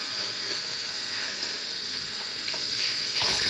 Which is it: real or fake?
fake